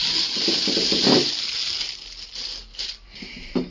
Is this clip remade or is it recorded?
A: recorded